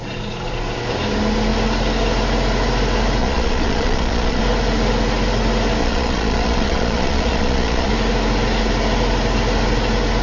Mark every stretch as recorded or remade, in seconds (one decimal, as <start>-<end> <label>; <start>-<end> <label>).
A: 0.0-3.2 recorded; 3.2-4.4 remade; 4.4-5.8 recorded; 5.8-7.9 remade; 7.9-10.2 recorded